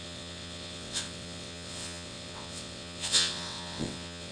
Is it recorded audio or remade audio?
remade